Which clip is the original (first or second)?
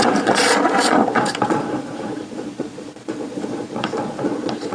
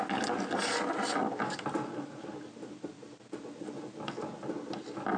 second